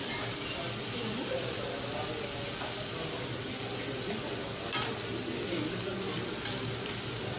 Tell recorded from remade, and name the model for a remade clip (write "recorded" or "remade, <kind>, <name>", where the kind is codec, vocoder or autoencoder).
recorded